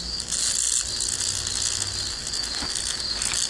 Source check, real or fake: real